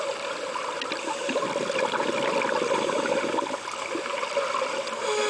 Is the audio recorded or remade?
recorded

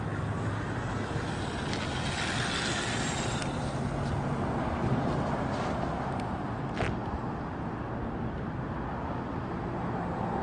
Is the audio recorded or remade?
recorded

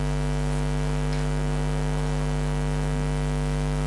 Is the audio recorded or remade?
recorded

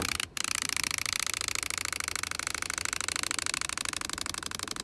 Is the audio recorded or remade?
recorded